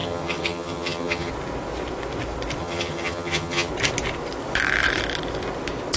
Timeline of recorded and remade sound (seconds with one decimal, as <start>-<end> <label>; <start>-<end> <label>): 0.0-1.3 remade; 1.3-2.6 recorded; 2.6-3.7 remade; 3.7-6.0 recorded